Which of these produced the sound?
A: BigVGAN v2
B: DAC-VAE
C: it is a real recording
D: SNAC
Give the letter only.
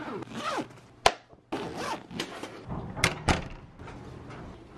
C